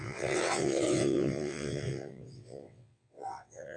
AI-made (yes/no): yes